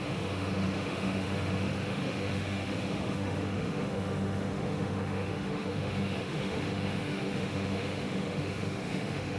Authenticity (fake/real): fake